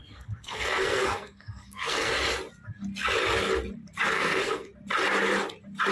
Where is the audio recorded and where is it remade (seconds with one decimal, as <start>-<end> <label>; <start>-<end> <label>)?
0.0-2.1 remade; 2.1-4.1 recorded; 4.1-4.7 remade; 4.7-5.9 recorded

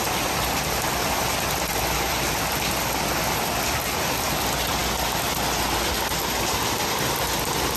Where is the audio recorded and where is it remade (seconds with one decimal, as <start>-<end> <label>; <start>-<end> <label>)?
0.0-7.8 recorded